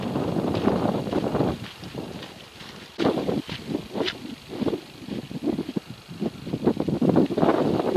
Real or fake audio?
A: real